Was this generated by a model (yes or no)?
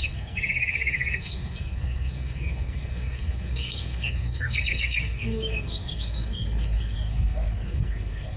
yes